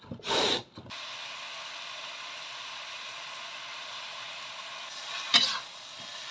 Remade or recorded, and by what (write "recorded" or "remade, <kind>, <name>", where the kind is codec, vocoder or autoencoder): recorded